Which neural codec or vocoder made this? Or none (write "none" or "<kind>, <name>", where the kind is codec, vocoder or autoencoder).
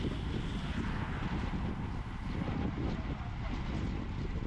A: none